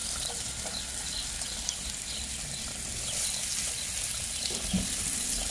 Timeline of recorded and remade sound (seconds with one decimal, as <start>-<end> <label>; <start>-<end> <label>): 0.0-5.5 recorded